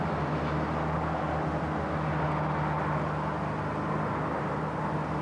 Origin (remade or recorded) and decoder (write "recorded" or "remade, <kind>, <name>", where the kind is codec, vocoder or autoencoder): recorded